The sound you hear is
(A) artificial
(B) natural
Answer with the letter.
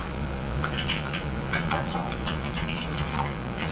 A